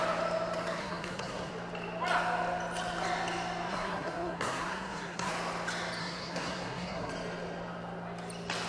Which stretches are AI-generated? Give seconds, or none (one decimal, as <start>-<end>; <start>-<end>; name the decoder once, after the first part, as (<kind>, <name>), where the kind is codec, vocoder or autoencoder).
0.8-1.5 (codec, SNAC); 3.7-5.3; 6.0-7.1